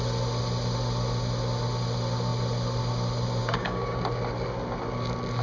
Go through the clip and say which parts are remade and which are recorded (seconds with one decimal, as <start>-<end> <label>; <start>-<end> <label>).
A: 0.0-3.4 recorded; 3.4-4.0 remade; 4.0-5.4 recorded